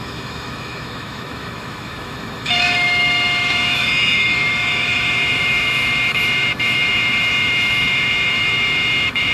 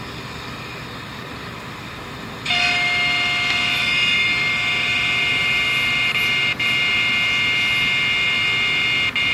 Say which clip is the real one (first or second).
second